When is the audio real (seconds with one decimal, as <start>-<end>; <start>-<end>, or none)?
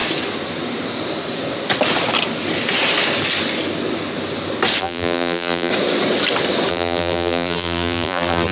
0.0-4.8; 5.7-6.7